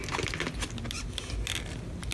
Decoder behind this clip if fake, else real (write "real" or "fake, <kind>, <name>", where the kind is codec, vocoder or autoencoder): real